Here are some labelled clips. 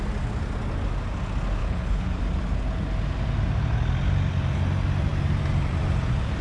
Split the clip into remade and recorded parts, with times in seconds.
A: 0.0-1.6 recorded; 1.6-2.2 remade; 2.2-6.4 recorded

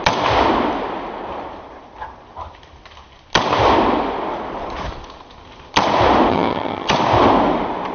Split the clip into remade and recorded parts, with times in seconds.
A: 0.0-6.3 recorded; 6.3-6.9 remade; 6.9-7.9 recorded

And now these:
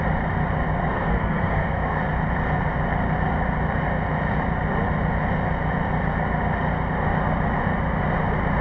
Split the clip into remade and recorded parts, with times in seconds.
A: 0.0-0.8 recorded; 0.8-2.0 remade; 2.0-8.6 recorded